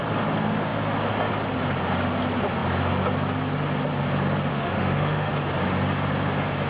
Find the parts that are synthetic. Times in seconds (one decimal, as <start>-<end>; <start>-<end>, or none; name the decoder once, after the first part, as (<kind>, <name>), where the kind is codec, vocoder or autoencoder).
4.5-5.3 (autoencoder, DAC-VAE)